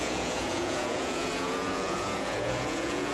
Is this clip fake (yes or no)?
yes